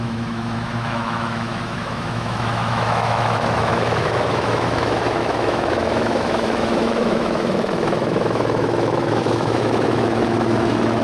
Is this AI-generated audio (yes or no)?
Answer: yes